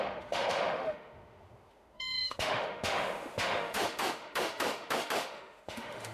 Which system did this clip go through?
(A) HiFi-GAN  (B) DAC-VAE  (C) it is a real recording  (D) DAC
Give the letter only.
B